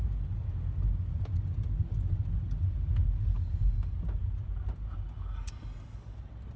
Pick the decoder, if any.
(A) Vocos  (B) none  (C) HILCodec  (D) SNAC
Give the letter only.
B